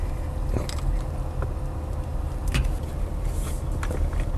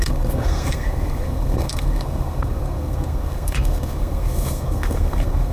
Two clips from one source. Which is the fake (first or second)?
second